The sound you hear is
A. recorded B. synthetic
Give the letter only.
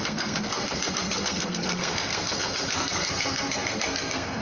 B